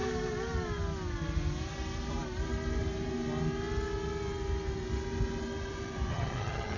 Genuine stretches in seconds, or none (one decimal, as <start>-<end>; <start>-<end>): 0.0-6.1